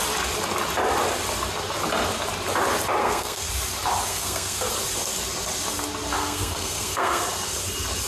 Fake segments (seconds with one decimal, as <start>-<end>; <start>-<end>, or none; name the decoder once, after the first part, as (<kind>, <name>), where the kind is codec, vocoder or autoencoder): 3.0-3.5 (codec, SNAC); 4.1-4.7; 6.2-7.2